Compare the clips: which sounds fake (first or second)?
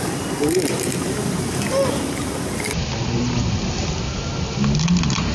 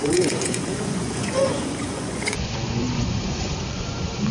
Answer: second